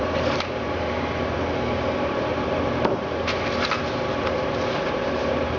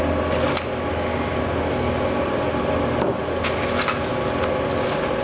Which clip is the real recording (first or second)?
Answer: second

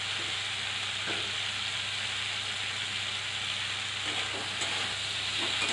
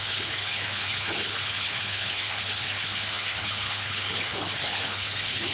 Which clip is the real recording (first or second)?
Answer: first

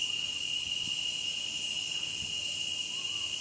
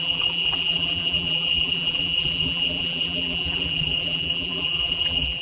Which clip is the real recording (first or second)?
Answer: first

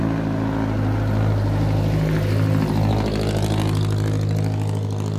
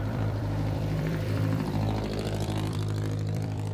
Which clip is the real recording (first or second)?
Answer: first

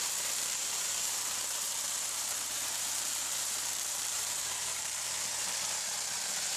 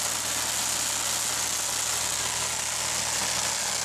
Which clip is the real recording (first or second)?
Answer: second